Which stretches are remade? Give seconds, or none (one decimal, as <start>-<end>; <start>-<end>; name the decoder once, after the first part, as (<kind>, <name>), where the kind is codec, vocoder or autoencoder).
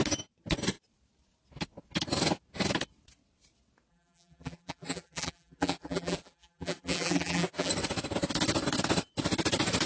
3.9-7.7 (vocoder, BigVGAN v2)